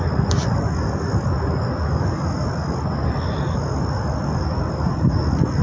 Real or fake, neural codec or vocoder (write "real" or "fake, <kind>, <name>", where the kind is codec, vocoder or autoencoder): real